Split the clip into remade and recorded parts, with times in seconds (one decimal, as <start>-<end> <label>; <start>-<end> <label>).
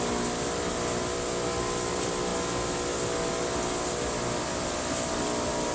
0.0-5.7 recorded